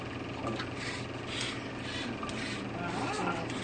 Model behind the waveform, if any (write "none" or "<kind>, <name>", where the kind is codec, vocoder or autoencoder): none